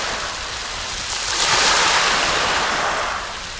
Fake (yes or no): no